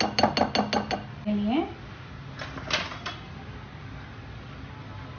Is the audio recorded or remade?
recorded